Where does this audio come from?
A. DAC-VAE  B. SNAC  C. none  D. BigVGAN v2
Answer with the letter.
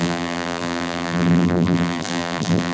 D